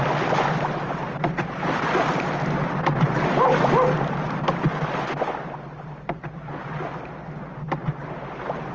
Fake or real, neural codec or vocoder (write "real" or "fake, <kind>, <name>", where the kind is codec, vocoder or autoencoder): real